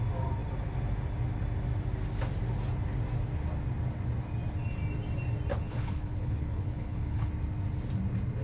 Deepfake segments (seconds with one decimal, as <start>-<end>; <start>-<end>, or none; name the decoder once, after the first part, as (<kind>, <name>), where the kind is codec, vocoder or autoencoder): 5.5-7.3 (codec, HILCodec)